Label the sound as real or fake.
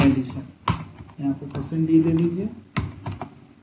real